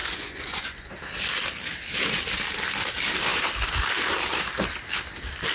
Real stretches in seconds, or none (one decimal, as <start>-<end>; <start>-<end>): 0.9-5.5

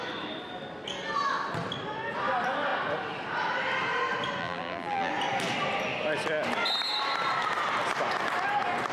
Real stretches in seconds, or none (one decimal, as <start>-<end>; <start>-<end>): 0.0-4.4; 5.1-8.9

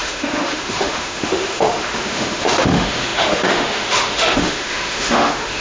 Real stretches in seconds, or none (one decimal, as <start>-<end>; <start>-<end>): none

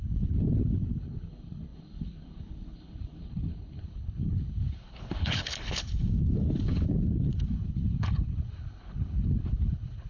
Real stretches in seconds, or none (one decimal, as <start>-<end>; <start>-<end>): none

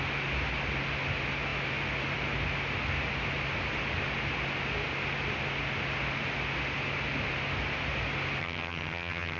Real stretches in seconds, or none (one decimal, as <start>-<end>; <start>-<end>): 0.0-8.4